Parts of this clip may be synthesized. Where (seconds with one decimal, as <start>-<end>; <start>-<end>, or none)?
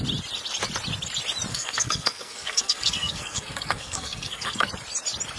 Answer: 1.5-4.7